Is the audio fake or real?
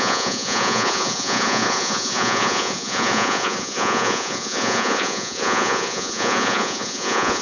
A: fake